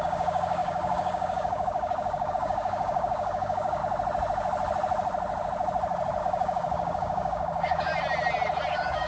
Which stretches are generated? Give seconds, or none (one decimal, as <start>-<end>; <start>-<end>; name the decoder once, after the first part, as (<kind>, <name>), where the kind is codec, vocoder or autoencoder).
0.0-3.8 (codec, DAC); 6.2-7.9; 8.7-9.1